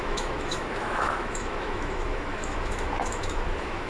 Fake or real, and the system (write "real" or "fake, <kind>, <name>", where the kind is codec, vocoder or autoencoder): fake, autoencoder, DAC-VAE